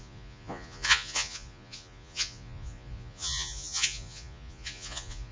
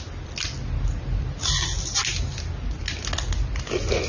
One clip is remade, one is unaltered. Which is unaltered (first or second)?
second